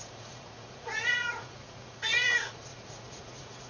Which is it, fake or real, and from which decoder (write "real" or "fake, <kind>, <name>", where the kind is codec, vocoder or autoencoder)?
fake, vocoder, Vocos